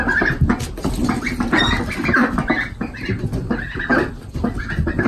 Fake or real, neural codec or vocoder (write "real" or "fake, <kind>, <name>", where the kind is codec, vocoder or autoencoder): real